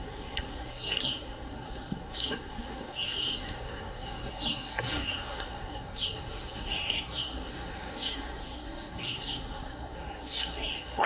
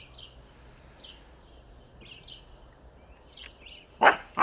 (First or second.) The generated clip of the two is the first